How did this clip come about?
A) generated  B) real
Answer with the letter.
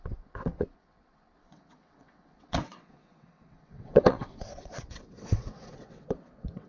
A